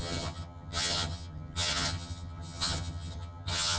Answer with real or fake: fake